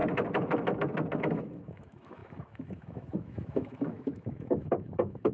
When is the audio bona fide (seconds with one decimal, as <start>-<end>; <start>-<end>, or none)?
0.0-1.2